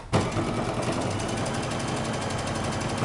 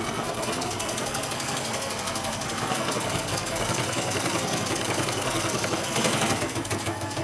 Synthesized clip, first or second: second